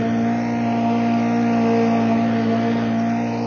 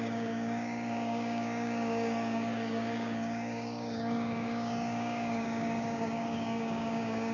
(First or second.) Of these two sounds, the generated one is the second